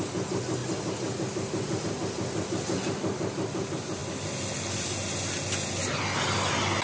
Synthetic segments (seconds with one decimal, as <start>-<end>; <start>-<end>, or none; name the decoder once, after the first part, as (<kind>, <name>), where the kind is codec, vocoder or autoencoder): none

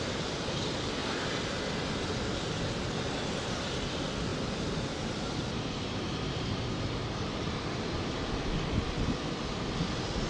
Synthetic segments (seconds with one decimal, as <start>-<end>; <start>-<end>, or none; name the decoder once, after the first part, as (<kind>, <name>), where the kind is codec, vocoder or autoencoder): 1.0-2.7 (vocoder, BigVGAN v2); 4.3-8.3

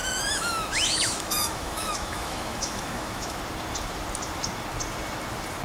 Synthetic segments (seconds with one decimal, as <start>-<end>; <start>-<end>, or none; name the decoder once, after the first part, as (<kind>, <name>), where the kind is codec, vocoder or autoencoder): 0.0-3.4 (autoencoder, DAC-VAE)

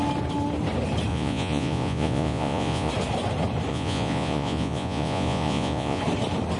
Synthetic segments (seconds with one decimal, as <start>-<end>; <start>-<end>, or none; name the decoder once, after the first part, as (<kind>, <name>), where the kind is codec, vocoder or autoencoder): 1.1-2.9 (vocoder, Vocos); 3.7-6.0

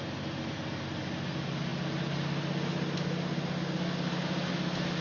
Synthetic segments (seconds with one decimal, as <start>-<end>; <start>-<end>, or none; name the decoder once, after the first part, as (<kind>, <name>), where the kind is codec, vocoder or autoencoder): none

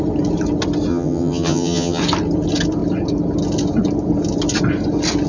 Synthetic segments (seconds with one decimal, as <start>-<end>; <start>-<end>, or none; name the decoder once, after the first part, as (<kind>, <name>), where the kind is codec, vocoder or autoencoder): 0.9-2.0 (vocoder, HiFi-GAN)

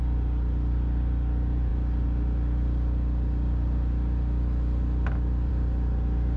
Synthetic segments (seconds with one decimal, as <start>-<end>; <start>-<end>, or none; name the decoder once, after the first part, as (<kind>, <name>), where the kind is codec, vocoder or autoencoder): none